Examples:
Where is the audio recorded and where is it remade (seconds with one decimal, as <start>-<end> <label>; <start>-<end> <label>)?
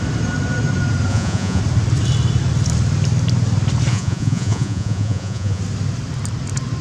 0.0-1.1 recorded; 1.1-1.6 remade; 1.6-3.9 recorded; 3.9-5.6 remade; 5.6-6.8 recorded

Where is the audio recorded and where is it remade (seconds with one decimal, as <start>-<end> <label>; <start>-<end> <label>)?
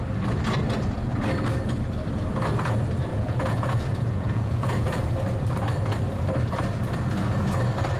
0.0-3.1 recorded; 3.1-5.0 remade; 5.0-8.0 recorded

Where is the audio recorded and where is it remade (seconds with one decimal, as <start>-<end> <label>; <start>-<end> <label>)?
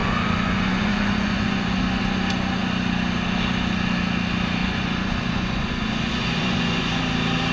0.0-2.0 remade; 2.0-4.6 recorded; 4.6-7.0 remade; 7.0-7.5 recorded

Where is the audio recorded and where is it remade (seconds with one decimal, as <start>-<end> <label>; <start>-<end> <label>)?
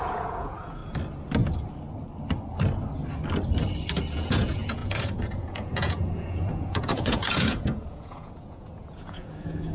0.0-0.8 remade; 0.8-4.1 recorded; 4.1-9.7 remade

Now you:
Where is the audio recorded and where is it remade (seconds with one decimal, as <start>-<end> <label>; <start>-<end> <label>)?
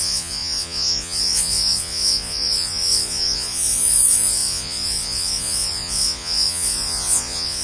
0.0-7.6 remade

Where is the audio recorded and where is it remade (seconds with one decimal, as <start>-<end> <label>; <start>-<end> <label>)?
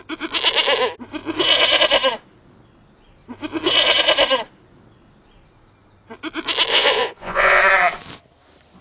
0.0-6.7 recorded; 6.7-7.6 remade; 7.6-8.8 recorded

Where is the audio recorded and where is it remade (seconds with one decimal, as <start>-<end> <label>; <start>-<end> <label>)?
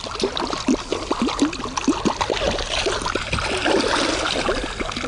0.0-5.1 recorded